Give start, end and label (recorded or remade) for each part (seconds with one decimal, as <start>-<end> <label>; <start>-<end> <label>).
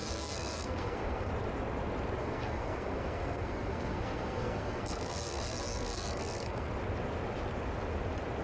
0.0-1.3 remade; 1.3-2.2 recorded; 2.2-6.7 remade; 6.7-8.4 recorded